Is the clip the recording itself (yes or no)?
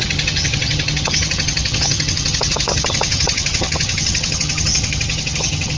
no